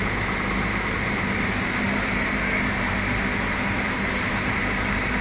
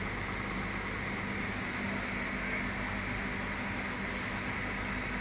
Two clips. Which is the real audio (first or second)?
second